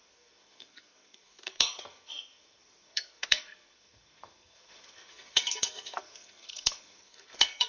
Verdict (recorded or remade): remade